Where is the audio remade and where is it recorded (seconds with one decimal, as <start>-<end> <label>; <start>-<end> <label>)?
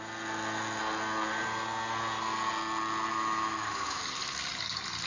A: 0.0-3.1 recorded; 3.1-4.0 remade; 4.0-5.1 recorded